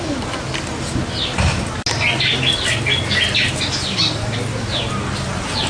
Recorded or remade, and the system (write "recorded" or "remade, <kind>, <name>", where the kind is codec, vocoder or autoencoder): recorded